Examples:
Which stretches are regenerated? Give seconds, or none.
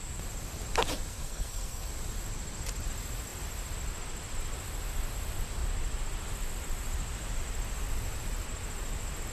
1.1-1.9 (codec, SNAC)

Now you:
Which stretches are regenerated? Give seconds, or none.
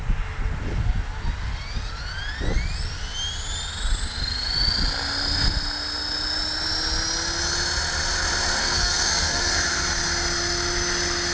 8.6-9.5 (codec, SNAC)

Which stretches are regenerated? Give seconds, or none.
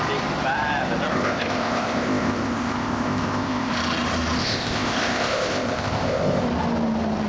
1.1-3.7 (codec, ZipCodec); 4.4-6.4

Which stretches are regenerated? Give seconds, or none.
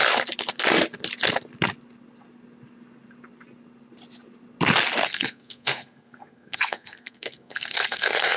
5.0-8.4 (codec, SNAC)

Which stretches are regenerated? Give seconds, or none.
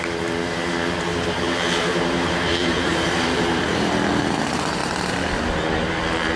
1.1-4.2 (vocoder, BigVGAN v2)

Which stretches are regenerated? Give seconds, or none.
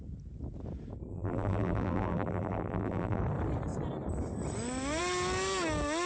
1.1-3.2 (vocoder, BigVGAN v2)